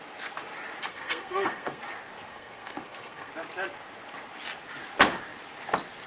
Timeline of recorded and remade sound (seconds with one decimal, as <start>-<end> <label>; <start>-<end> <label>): 0.0-0.9 recorded; 0.9-1.8 remade; 1.8-2.3 recorded; 2.3-3.3 remade; 3.3-6.1 recorded